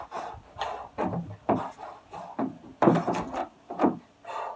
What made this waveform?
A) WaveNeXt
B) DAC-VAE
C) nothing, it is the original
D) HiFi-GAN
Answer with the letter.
C